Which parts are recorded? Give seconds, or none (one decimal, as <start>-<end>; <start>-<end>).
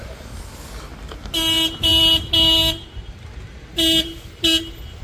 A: 0.0-5.0